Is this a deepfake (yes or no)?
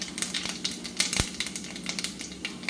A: no